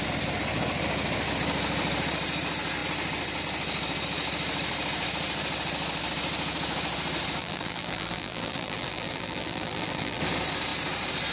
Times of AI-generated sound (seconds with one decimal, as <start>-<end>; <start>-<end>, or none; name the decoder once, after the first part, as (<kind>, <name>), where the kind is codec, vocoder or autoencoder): 7.4-10.2 (vocoder, BigVGAN v2)